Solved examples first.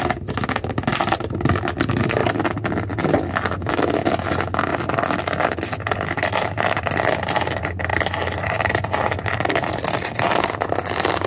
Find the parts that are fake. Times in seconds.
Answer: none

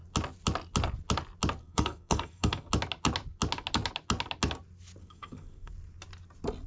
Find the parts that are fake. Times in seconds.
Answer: 1.6-2.7 (codec, SNAC); 5.0-5.7

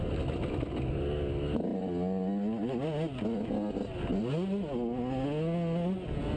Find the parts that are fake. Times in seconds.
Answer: none

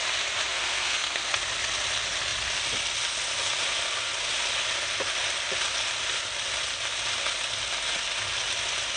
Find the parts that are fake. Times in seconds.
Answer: 0.5-1.3 (codec, SNAC)

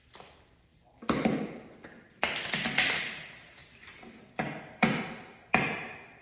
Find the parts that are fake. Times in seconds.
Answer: none

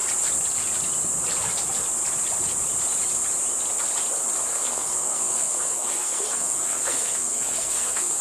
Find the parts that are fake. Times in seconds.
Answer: 4.5-8.2 (codec, SNAC)

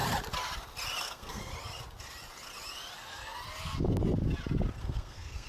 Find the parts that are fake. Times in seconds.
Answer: 1.0-1.5 (codec, SNAC); 4.8-5.5